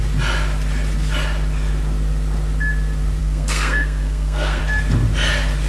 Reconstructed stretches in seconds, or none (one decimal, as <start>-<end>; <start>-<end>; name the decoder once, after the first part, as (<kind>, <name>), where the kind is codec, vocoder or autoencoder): 3.2-4.6 (codec, SNAC)